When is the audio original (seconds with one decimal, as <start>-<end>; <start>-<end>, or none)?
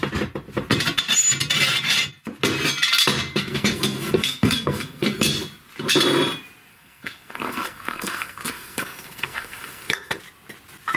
0.0-3.4; 5.3-6.7; 10.2-11.0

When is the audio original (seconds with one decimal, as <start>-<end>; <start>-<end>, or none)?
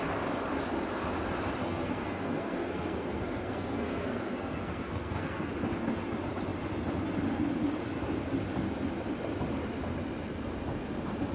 0.0-1.6; 5.5-11.3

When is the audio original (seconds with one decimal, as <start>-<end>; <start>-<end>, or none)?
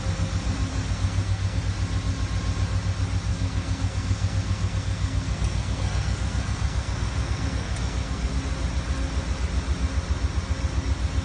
0.0-0.7; 1.6-3.3; 8.3-11.2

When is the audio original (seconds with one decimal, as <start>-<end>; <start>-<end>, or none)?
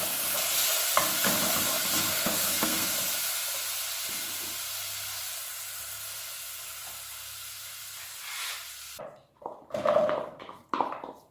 0.0-2.1; 2.9-11.3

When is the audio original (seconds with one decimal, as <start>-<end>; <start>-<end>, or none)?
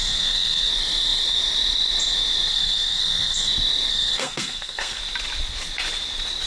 0.7-2.5; 3.5-3.9; 5.0-6.5